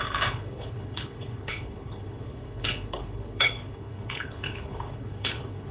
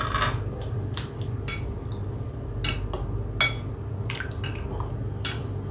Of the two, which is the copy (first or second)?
first